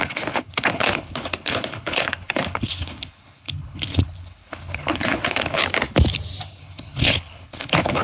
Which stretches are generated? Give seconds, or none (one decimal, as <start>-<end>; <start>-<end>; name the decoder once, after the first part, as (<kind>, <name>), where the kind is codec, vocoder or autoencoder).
0.0-5.6 (codec, HILCodec); 6.4-8.0